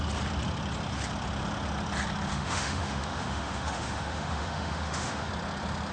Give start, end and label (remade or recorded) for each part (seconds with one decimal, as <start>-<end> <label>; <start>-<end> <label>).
0.0-2.3 recorded; 2.3-5.3 remade; 5.3-5.9 recorded